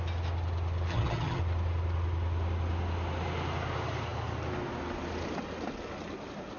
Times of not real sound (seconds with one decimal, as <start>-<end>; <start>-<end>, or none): 0.9-1.4